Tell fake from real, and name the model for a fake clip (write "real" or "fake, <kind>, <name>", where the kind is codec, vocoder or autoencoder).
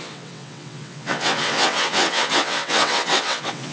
fake, vocoder, WaveNeXt